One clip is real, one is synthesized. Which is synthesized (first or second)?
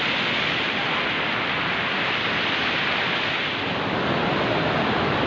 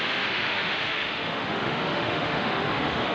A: second